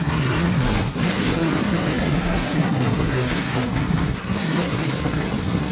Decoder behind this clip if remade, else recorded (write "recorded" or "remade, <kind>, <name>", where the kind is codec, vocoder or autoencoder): remade, codec, SNAC